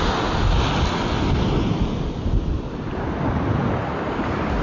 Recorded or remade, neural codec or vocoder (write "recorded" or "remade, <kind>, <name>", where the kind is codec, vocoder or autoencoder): recorded